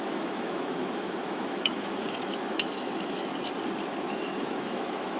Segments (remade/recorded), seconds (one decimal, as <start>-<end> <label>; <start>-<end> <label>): 0.0-3.3 remade; 3.3-4.4 recorded; 4.4-5.2 remade